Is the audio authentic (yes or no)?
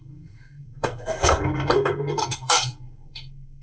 no